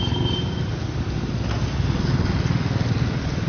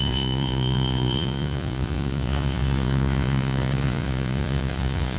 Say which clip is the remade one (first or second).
second